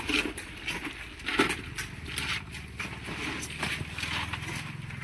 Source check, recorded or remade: recorded